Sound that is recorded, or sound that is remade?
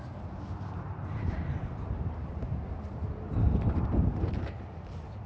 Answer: remade